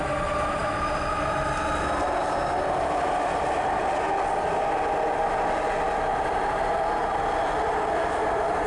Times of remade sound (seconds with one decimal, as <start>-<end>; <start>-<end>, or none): 6.1-8.7